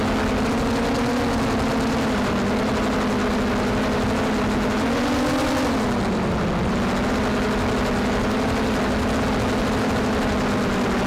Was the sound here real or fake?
real